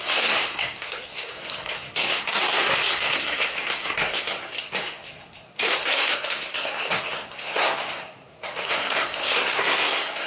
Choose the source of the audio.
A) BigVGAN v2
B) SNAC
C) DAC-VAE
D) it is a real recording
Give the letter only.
B